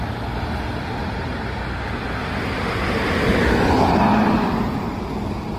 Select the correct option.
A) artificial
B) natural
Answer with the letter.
B